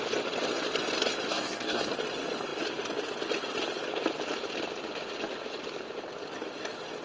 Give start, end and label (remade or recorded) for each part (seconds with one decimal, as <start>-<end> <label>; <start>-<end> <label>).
0.0-1.3 recorded; 1.3-1.9 remade; 1.9-7.0 recorded